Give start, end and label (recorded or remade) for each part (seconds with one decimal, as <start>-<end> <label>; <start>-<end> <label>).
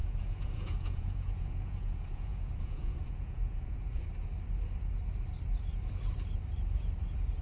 0.0-4.0 remade; 4.0-7.4 recorded